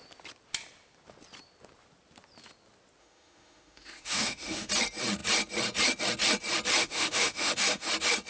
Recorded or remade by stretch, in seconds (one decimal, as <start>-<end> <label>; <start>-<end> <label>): 0.0-3.0 recorded; 3.0-4.7 remade; 4.7-6.8 recorded; 6.8-7.9 remade; 7.9-8.3 recorded